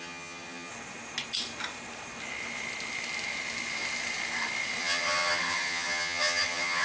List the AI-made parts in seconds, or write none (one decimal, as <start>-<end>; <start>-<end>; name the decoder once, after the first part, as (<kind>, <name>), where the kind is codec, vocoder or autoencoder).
0.0-0.7 (vocoder, HiFi-GAN); 4.8-6.8